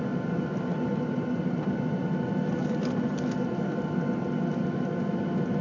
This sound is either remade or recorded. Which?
recorded